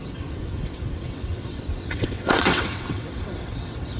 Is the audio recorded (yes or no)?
no